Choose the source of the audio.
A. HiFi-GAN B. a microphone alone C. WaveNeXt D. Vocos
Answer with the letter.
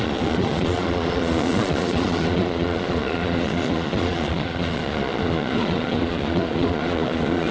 D